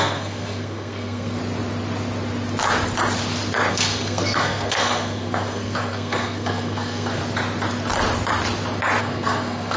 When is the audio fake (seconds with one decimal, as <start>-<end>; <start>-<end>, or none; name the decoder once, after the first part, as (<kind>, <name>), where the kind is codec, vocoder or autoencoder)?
0.0-1.4 (codec, SNAC); 3.7-7.2; 9.0-9.8